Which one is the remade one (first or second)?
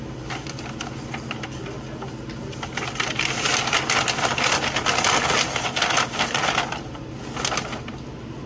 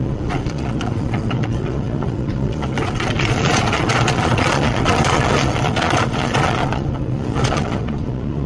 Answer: second